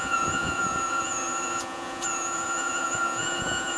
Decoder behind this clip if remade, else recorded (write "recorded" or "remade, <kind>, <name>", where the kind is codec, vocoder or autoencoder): remade, vocoder, Vocos